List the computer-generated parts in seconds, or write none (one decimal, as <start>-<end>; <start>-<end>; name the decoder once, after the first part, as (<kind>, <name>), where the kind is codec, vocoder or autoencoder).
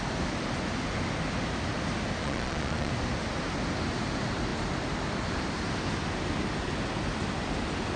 2.2-2.9 (vocoder, Vocos)